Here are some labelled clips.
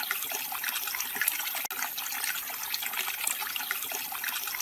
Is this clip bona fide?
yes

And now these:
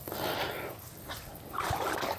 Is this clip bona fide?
yes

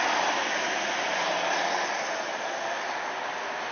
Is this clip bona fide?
yes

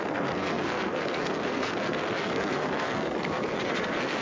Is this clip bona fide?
no